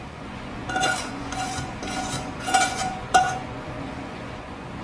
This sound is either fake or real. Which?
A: fake